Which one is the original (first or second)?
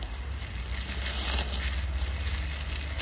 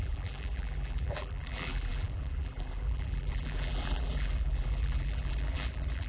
first